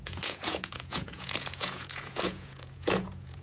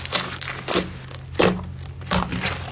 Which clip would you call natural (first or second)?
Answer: second